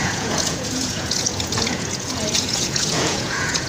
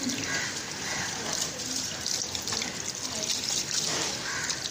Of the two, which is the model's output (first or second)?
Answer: first